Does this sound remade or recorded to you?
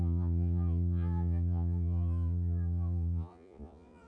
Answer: remade